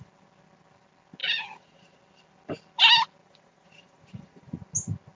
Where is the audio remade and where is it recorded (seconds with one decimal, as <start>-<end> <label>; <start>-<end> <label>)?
0.0-1.2 recorded; 1.2-2.0 remade; 2.0-3.2 recorded; 3.2-4.6 remade; 4.6-5.2 recorded